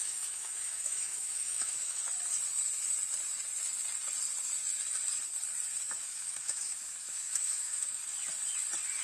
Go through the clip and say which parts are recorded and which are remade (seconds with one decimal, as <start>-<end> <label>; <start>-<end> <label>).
0.0-2.0 remade; 2.0-6.0 recorded; 6.0-8.0 remade; 8.0-9.0 recorded